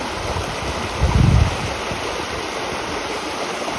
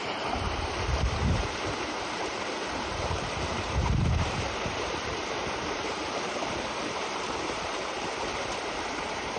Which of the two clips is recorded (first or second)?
first